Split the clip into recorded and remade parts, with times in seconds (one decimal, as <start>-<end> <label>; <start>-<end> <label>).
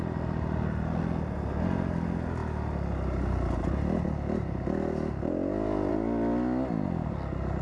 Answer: 0.0-7.6 recorded